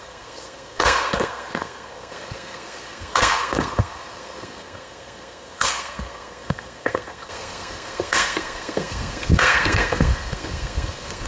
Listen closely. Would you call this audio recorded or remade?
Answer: remade